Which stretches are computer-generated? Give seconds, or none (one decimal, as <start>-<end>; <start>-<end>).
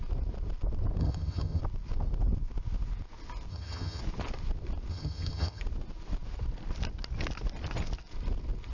1.0-1.6; 3.5-4.0; 4.9-5.6